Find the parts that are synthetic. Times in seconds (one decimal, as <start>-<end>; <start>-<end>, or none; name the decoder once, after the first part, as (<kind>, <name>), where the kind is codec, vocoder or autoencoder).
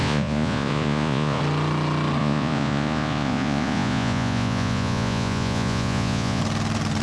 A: 0.0-1.4 (vocoder, Vocos); 2.2-6.4